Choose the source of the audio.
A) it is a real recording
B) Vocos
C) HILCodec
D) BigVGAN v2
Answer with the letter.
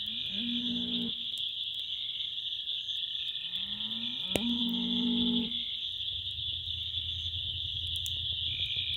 A